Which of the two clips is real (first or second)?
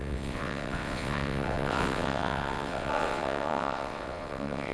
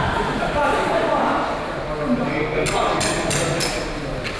second